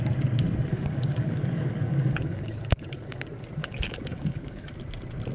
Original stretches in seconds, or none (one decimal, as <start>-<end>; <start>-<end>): 0.0-0.7; 3.2-3.6; 4.7-5.3